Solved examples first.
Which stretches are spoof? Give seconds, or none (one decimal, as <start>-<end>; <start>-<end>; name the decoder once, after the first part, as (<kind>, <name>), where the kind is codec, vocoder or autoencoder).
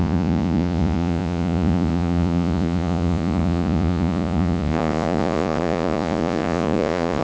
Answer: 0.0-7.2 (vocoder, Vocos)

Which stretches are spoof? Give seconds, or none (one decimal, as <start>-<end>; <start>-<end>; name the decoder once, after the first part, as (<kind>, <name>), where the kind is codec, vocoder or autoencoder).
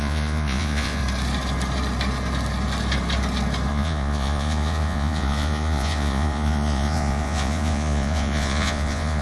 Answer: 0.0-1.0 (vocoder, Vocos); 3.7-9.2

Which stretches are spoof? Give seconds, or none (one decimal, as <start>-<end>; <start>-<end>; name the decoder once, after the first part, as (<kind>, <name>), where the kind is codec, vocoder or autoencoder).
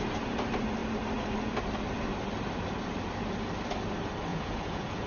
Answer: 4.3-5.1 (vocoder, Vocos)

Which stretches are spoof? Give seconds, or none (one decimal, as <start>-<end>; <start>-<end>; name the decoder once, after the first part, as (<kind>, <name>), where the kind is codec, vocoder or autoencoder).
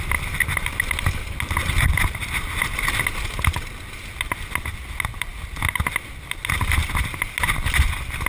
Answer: none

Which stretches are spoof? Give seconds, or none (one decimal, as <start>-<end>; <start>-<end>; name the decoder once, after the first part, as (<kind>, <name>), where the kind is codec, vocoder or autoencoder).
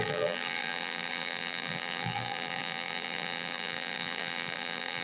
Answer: 0.0-5.0 (vocoder, BigVGAN v2)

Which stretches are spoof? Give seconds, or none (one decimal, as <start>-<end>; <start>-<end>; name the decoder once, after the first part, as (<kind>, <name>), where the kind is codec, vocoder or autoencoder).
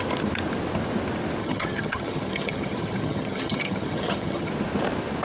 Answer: 1.4-4.5 (vocoder, HiFi-GAN)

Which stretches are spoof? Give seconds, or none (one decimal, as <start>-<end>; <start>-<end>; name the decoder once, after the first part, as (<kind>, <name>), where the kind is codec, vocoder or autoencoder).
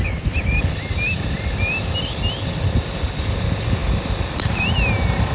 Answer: none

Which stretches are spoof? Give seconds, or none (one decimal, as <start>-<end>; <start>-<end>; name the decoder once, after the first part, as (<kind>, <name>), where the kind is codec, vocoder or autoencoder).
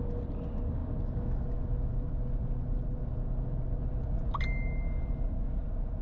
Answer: none